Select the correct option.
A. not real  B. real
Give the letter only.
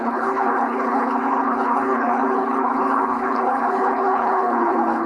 A